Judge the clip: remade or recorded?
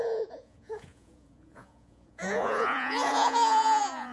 remade